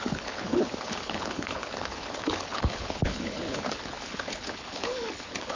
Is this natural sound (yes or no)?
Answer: no